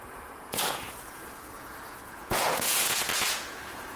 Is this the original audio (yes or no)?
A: no